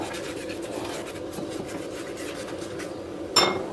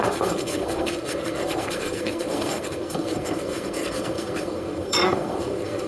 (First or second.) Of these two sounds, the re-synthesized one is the second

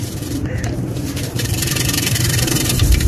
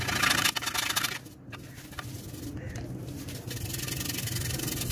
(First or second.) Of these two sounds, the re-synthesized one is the first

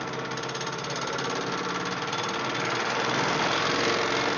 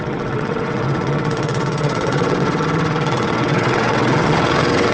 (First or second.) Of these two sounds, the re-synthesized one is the second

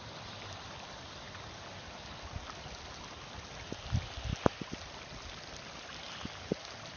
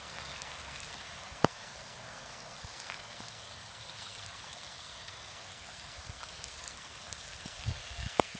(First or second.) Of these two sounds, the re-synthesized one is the second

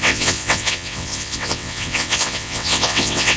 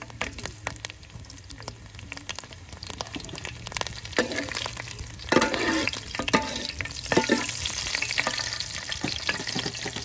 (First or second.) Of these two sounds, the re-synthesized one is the first